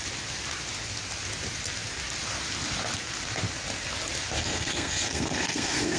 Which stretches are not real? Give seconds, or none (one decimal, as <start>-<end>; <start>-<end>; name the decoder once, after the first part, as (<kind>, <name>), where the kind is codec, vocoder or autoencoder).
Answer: 4.4-6.0 (codec, SNAC)